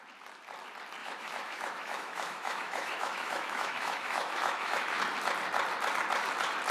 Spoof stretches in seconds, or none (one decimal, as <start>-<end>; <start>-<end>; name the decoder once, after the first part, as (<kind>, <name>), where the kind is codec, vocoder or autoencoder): 1.0-5.0 (autoencoder, DAC-VAE)

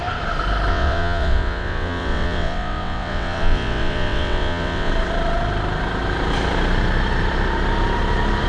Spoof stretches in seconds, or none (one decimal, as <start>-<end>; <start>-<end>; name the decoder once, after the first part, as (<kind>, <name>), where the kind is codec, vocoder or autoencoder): 0.7-4.9 (vocoder, WaveNeXt)

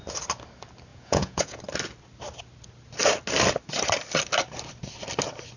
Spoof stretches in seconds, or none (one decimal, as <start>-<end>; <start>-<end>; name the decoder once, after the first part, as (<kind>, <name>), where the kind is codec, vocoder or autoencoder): 0.9-1.6 (vocoder, Vocos)

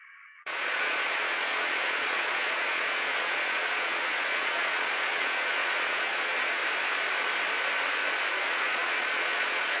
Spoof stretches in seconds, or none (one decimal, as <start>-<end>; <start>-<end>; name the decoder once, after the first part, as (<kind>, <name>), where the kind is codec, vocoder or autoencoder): 0.0-6.6 (vocoder, Vocos); 8.4-9.8

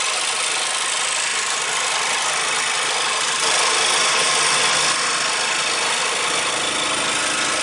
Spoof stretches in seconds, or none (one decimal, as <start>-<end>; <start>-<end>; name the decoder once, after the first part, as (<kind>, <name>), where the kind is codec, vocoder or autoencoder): none

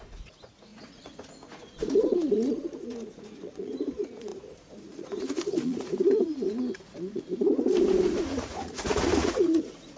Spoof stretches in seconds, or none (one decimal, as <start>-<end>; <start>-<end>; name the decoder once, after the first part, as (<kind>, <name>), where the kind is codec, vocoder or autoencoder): 0.0-10.0 (vocoder, Vocos)